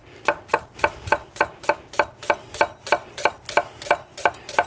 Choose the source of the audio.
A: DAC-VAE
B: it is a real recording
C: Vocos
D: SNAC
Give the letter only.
B